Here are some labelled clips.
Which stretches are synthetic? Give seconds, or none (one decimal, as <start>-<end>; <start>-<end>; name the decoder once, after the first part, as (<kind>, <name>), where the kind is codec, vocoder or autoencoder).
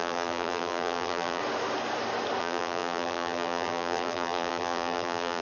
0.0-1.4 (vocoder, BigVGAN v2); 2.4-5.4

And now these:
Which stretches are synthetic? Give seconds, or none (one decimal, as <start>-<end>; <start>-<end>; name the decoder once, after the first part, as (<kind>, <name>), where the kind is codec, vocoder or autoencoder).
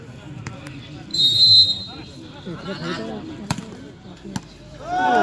1.1-3.9 (vocoder, BigVGAN v2)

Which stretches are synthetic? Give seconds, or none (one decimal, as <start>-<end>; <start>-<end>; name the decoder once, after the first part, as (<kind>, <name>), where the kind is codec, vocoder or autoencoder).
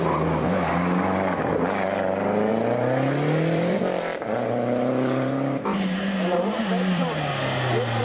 2.5-7.3 (vocoder, BigVGAN v2)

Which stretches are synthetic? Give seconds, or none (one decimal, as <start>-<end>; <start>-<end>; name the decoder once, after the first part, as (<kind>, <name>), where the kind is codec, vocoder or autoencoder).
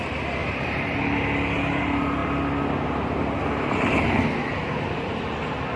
0.4-1.8 (vocoder, BigVGAN v2)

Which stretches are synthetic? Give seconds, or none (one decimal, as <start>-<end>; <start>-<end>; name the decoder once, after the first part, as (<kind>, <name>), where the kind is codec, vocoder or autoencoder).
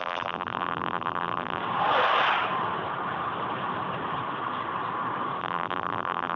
0.0-1.6 (vocoder, BigVGAN v2); 5.4-6.4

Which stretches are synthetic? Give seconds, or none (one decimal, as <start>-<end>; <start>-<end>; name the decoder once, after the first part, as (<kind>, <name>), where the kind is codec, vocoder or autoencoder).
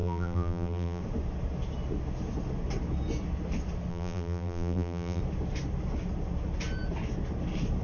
0.0-1.0 (vocoder, BigVGAN v2); 3.9-5.2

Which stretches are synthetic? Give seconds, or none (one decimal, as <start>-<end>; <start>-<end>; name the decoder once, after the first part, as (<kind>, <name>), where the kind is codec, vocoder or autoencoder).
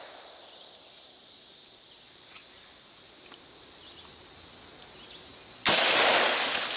none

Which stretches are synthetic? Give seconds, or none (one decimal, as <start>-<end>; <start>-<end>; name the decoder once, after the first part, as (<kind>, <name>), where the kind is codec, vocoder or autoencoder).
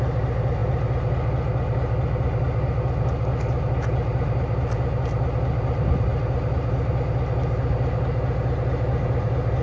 none